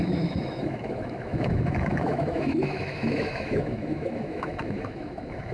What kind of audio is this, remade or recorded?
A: remade